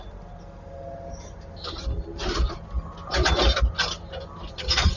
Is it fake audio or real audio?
real